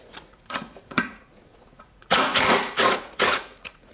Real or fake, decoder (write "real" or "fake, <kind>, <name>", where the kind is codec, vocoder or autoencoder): fake, vocoder, Vocos